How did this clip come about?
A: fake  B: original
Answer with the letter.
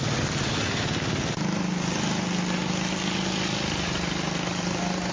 B